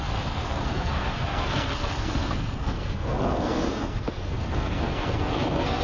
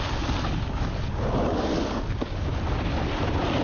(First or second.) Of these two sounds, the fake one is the first